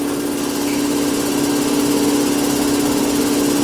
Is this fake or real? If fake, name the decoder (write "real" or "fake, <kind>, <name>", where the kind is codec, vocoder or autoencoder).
real